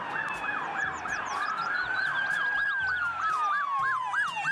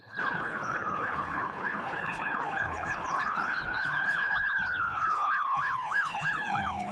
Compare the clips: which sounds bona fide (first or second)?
first